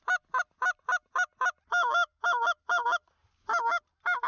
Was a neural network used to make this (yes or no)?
no